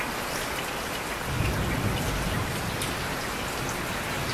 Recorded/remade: recorded